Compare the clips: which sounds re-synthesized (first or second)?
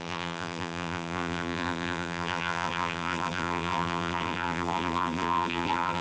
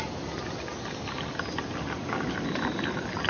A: first